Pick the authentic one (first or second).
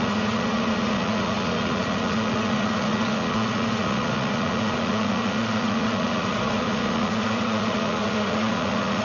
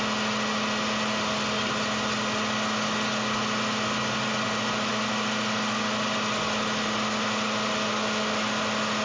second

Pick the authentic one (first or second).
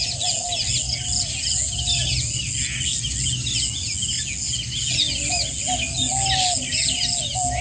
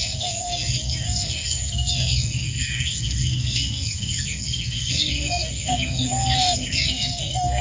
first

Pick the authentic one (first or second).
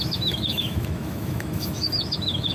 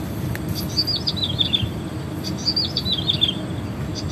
second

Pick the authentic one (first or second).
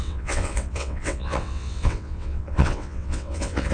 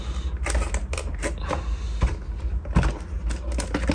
second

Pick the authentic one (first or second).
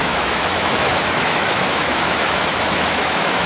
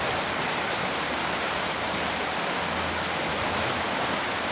second